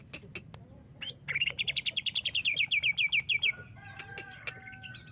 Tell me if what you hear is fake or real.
real